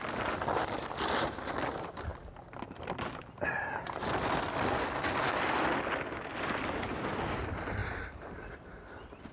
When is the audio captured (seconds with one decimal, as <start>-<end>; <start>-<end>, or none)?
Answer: 0.0-9.3